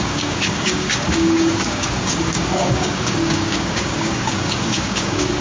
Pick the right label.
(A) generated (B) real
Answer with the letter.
A